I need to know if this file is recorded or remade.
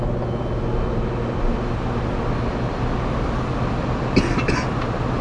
recorded